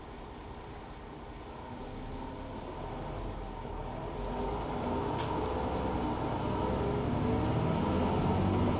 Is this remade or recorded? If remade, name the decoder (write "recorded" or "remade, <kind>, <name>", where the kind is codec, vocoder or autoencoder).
recorded